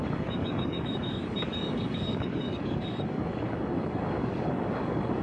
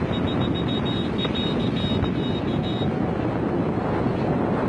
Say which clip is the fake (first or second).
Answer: first